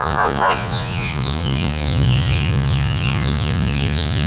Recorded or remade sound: remade